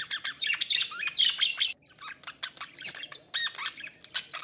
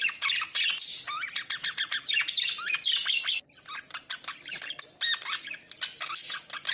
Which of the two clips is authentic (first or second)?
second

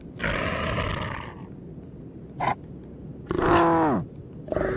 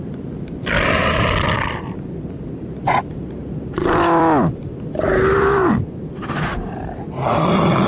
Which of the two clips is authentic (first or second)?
first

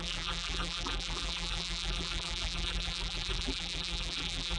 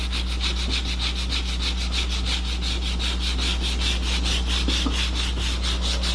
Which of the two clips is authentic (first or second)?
second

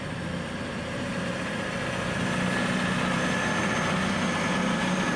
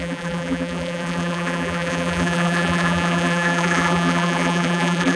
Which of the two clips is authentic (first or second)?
first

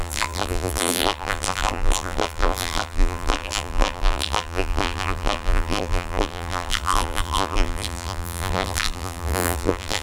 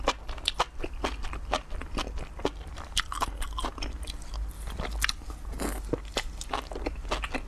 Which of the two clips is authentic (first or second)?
second